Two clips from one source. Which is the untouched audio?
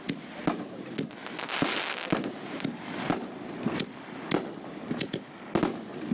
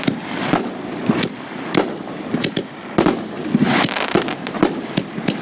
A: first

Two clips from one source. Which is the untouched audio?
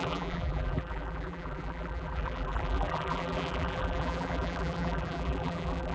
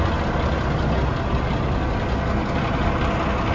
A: second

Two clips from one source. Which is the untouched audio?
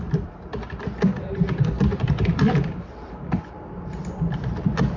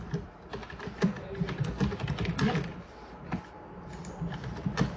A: second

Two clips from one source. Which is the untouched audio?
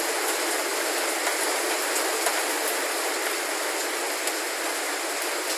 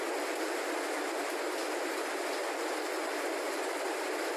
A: first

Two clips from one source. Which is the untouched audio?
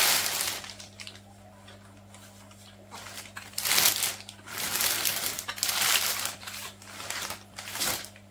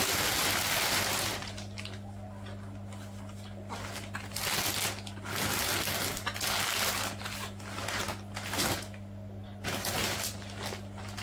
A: second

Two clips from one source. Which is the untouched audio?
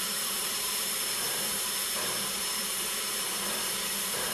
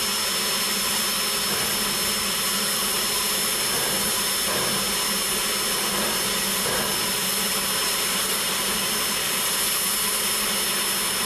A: second